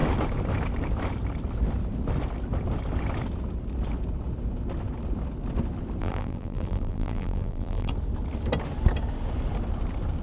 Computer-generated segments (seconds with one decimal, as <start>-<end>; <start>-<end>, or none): 6.0-7.9